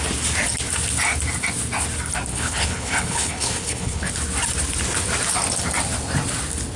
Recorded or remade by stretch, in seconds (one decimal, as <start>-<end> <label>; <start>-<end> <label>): 0.0-2.3 recorded; 2.3-4.1 remade; 4.1-6.8 recorded